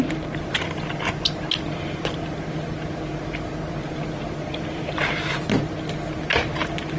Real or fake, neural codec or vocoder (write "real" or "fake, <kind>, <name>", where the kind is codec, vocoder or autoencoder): real